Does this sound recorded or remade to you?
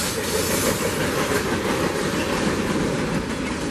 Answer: recorded